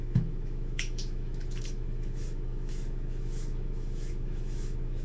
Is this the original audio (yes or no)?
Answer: no